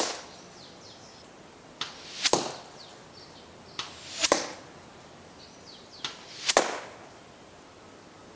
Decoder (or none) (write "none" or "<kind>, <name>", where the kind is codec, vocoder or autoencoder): none